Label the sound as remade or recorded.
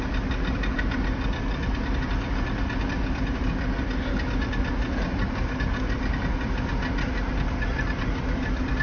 recorded